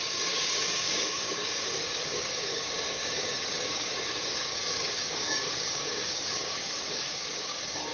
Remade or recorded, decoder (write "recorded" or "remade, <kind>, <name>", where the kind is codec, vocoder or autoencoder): remade, codec, DAC